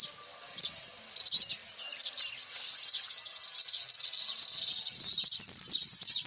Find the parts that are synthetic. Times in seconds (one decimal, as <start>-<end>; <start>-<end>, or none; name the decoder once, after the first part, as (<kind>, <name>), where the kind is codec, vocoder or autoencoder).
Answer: none